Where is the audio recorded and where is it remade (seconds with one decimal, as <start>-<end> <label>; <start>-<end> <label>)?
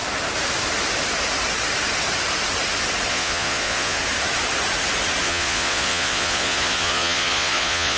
0.0-3.1 recorded; 3.1-4.0 remade; 4.0-5.2 recorded; 5.2-8.0 remade